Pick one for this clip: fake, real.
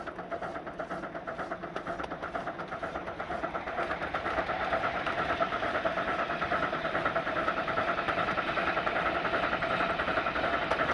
real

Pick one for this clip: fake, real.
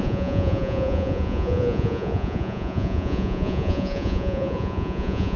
fake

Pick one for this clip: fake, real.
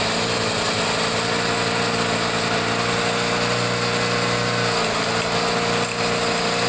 real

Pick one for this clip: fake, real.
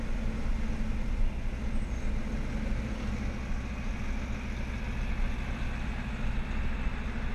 real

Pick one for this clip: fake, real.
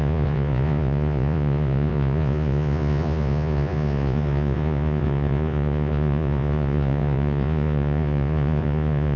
fake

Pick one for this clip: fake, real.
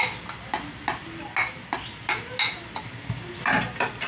real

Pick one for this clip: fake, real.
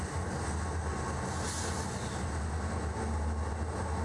real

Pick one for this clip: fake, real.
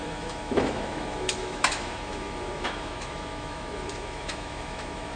fake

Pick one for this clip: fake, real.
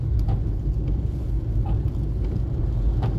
real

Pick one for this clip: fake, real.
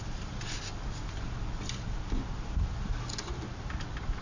real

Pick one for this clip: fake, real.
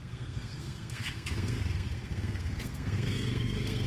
fake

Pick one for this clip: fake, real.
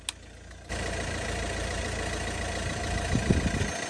real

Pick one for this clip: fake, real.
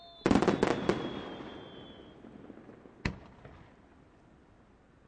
real